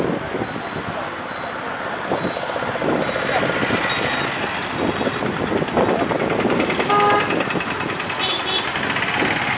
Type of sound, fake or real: real